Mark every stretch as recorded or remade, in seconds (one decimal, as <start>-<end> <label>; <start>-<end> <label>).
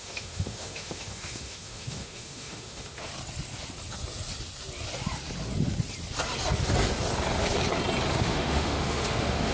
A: 0.0-3.1 remade; 3.1-8.1 recorded; 8.1-9.5 remade